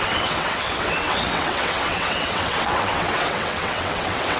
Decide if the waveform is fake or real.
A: fake